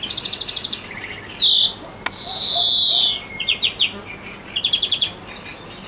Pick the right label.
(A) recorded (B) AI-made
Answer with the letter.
A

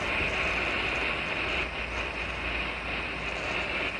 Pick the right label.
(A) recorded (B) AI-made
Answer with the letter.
A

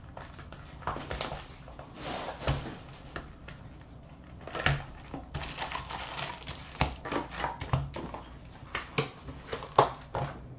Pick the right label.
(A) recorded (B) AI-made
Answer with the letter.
A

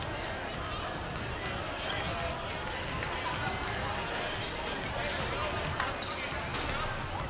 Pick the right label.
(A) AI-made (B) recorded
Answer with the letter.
B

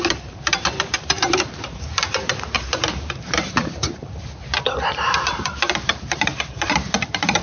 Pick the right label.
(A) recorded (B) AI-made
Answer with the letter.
B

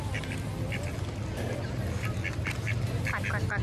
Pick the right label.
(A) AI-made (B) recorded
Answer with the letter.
B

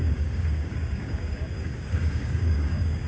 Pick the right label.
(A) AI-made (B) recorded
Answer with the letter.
A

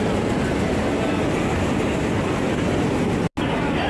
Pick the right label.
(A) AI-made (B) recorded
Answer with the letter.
B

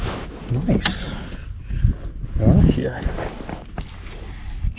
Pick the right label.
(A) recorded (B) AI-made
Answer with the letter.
A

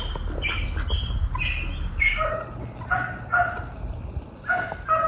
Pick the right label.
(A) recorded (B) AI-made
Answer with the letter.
A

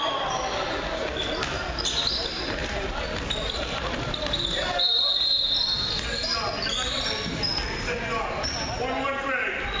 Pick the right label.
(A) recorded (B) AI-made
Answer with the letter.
A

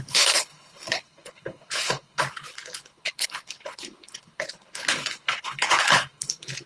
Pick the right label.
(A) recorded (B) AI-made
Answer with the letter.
B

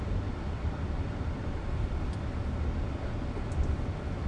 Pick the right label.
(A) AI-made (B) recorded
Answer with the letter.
B